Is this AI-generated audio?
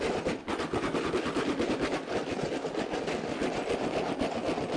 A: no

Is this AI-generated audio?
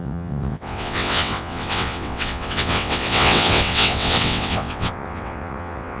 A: yes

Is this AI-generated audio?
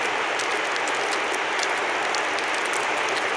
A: no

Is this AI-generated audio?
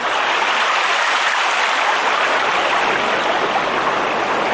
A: no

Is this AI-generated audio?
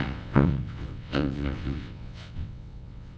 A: yes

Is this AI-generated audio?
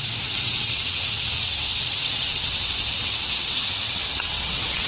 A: yes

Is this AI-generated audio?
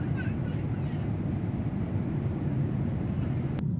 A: no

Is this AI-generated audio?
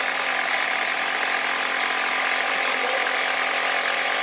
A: no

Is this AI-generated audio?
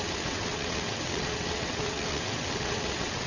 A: yes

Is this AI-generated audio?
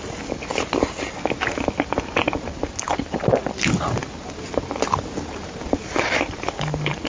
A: no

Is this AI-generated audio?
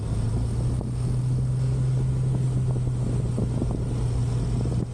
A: no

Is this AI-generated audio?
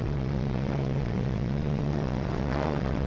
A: yes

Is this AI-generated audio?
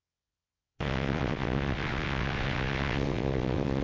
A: yes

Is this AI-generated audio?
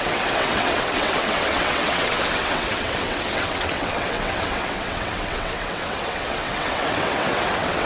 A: yes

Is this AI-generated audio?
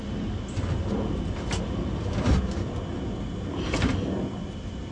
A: no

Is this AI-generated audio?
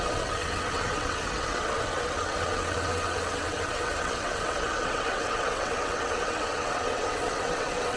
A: yes